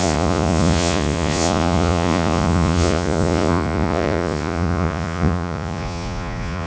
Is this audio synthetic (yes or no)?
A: yes